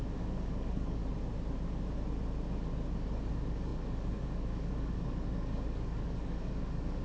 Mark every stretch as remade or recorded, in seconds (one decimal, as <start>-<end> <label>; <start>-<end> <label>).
0.0-1.0 remade; 1.0-3.3 recorded; 3.3-7.0 remade